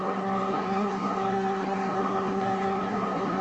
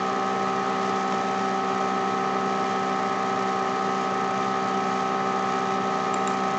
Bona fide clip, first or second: second